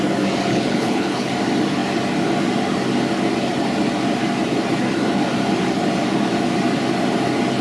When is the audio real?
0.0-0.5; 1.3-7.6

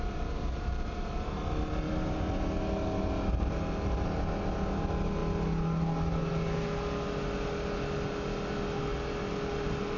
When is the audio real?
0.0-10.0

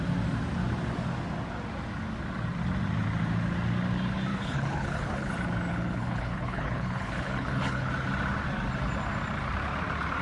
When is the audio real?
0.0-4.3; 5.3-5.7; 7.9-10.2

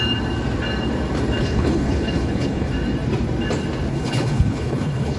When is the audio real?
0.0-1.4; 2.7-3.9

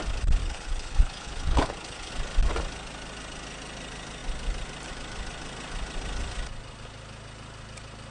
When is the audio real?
0.0-0.4; 2.1-8.1